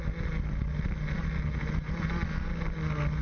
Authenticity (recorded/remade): recorded